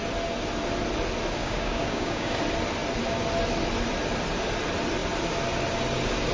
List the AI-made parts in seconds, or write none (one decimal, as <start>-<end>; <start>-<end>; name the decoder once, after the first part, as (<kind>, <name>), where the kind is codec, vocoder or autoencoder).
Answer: 1.4-2.4 (codec, DAC)